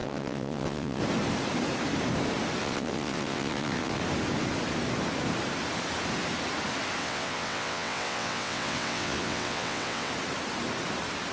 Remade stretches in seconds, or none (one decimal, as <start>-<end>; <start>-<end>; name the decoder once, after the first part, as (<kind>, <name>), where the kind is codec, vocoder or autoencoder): 0.0-1.0 (vocoder, WaveNeXt); 2.6-4.0; 7.0-10.1

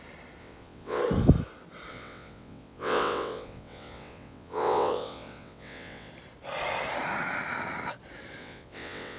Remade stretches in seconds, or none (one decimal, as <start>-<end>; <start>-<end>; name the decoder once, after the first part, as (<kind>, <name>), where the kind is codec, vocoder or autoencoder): 0.4-1.0 (vocoder, WaveNeXt); 1.9-6.1; 8.4-9.2

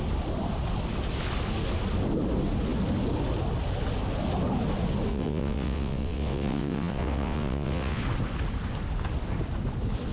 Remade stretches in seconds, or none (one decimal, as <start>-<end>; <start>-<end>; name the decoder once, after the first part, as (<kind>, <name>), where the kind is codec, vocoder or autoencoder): 5.1-8.0 (vocoder, WaveNeXt)

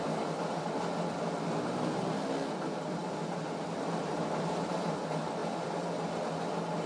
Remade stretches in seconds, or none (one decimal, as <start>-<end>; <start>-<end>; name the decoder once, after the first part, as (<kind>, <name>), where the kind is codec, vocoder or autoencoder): none

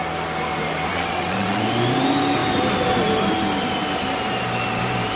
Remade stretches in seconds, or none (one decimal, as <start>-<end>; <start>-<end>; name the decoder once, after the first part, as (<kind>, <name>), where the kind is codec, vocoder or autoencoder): 0.9-1.6 (vocoder, WaveNeXt)

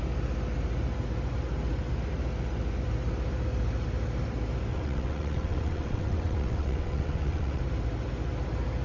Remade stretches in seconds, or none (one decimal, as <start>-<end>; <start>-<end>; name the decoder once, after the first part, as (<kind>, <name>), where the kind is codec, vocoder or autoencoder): 4.7-7.6 (vocoder, WaveNeXt)